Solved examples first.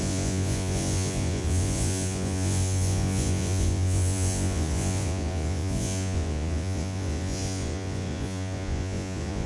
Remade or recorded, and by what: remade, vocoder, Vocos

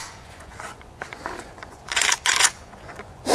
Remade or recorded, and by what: remade, vocoder, Vocos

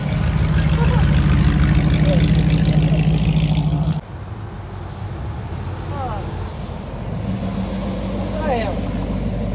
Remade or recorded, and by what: recorded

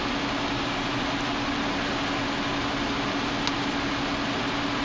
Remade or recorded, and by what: recorded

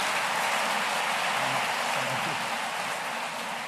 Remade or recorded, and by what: recorded